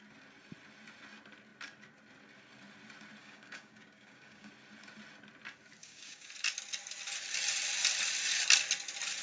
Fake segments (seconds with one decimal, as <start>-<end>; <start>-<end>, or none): 3.2-4.5; 5.8-6.3